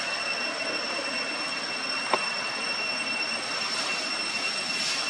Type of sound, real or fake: real